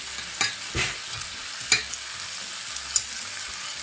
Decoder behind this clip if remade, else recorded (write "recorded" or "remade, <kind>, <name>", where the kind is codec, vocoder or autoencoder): recorded